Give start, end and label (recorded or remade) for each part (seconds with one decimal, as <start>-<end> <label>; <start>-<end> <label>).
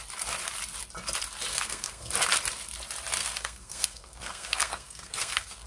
0.0-1.5 recorded; 1.5-2.1 remade; 2.1-3.2 recorded; 3.2-5.7 remade